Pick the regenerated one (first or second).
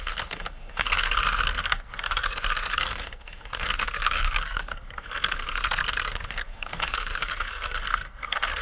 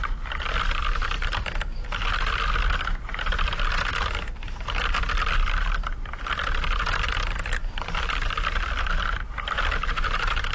first